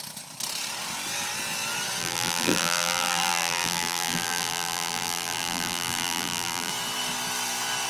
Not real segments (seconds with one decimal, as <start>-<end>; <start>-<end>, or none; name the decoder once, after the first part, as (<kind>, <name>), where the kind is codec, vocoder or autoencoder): 2.0-6.7 (vocoder, BigVGAN v2)